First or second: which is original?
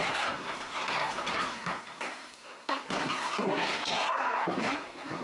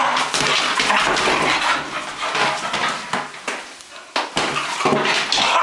second